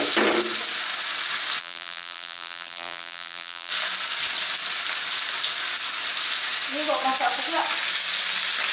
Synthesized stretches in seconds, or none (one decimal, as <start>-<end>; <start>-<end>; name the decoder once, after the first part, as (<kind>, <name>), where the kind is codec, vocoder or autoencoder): 1.6-3.7 (vocoder, BigVGAN v2)